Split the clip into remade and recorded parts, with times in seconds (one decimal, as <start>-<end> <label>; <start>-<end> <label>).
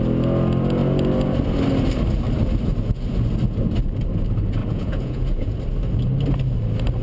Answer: 0.0-4.6 recorded; 4.6-5.6 remade; 5.6-7.0 recorded